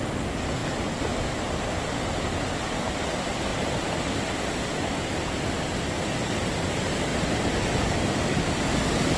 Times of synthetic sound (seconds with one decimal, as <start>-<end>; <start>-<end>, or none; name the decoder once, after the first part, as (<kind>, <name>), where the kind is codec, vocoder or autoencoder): 0.6-1.3 (vocoder, BigVGAN v2); 7.1-8.7